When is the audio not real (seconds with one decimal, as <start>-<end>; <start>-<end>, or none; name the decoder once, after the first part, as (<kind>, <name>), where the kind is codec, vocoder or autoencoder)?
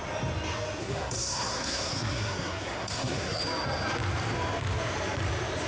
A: 0.8-3.4 (codec, SNAC)